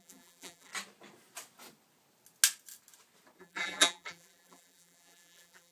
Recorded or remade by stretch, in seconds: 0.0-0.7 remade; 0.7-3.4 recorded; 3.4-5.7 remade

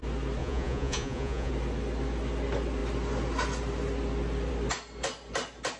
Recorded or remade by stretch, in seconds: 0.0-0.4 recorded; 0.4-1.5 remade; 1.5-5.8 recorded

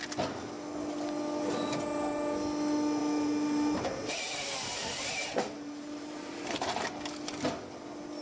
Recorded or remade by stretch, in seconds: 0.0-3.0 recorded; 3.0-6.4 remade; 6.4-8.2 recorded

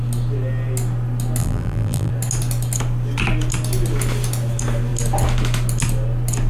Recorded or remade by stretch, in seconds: 0.0-1.4 recorded; 1.4-2.1 remade; 2.1-6.5 recorded

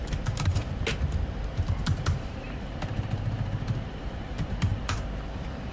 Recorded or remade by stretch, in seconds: 0.0-0.6 remade; 0.6-1.5 recorded; 1.5-2.9 remade; 2.9-3.9 recorded; 3.9-4.7 remade; 4.7-5.7 recorded